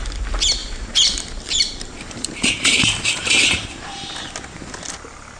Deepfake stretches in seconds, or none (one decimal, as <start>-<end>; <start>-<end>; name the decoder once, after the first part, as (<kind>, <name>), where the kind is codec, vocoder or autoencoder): 0.6-3.8 (vocoder, BigVGAN v2)